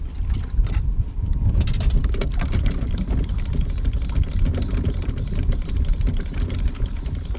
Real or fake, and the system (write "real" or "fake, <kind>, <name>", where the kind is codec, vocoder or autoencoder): fake, vocoder, BigVGAN v2